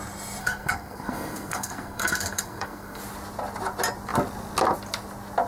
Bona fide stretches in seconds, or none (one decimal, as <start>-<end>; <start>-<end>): 0.0-0.4; 3.0-5.5